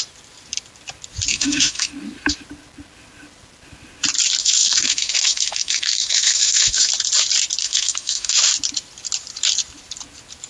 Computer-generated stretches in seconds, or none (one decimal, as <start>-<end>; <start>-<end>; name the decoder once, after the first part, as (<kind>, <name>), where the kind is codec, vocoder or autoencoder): 1.3-1.9 (autoencoder, DAC-VAE); 4.4-6.9; 7.6-8.5